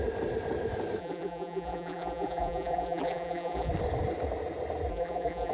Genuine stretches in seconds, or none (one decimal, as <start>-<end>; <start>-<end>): 0.0-1.0; 3.7-4.9